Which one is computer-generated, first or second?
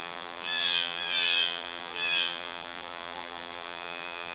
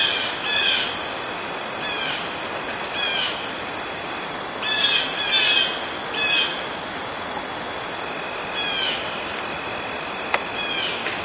first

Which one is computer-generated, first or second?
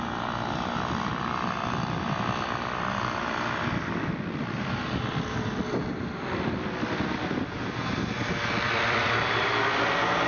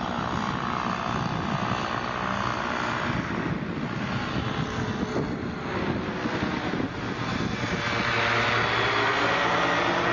first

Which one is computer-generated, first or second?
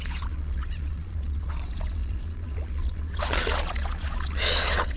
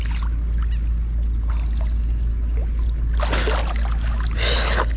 first